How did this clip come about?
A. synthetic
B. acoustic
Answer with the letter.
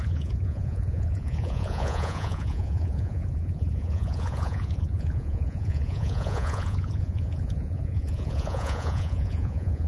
A